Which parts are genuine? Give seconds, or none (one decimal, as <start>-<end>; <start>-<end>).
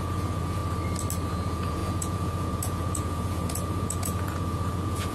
0.6-1.3